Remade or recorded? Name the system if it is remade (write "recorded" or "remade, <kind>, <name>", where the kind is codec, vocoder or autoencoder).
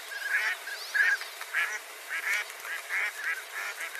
recorded